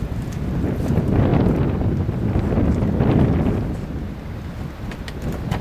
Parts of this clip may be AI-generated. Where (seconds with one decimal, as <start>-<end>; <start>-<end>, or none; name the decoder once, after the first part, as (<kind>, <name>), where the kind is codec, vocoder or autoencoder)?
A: none